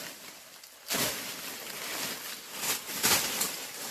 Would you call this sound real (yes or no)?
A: yes